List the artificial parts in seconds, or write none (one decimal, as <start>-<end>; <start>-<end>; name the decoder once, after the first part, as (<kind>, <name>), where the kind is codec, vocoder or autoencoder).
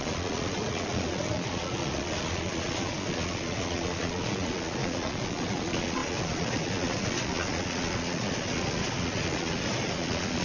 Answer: 0.0-10.4 (vocoder, Vocos)